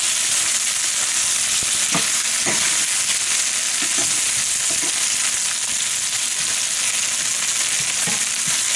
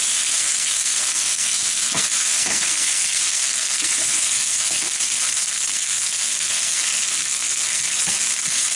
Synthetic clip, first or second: second